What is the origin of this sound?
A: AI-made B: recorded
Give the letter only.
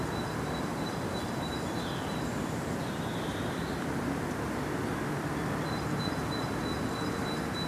B